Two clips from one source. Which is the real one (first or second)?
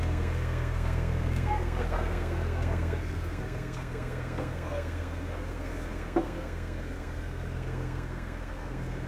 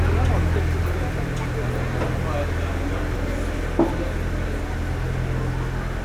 second